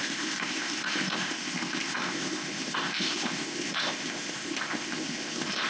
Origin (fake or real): fake